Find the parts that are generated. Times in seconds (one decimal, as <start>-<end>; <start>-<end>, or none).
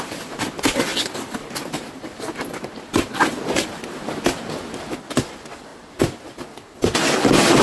none